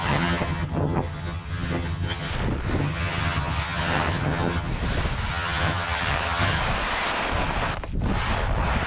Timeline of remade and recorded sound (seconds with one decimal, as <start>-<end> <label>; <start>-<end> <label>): 0.0-2.3 remade; 2.3-2.8 recorded; 2.8-4.7 remade; 4.7-5.3 recorded; 5.3-6.6 remade; 6.6-8.9 recorded